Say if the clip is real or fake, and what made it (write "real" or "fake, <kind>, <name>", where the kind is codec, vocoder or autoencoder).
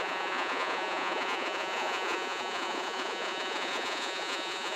fake, vocoder, Vocos